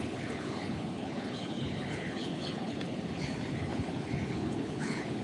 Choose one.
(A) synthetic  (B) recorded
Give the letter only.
A